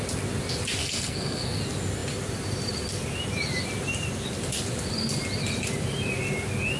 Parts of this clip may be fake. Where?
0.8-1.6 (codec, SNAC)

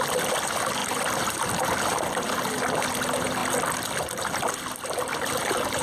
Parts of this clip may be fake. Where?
0.0-5.8 (vocoder, BigVGAN v2)

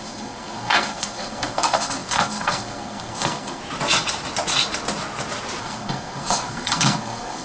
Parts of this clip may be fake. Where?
0.0-3.6 (codec, SNAC); 5.6-7.4